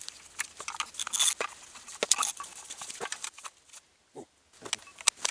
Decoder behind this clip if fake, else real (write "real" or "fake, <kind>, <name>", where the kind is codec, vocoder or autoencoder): real